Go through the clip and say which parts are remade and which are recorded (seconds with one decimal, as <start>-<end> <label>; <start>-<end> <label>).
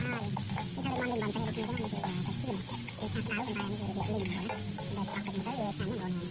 0.0-5.1 recorded; 5.1-5.8 remade; 5.8-6.3 recorded